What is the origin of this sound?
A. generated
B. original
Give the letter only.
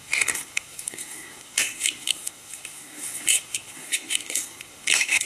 A